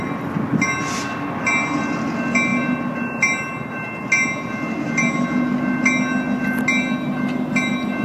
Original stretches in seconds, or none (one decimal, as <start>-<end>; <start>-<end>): 0.0-8.0